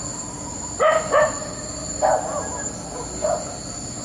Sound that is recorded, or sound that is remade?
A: recorded